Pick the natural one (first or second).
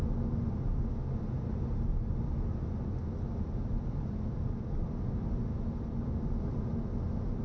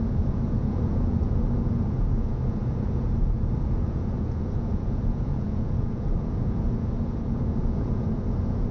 first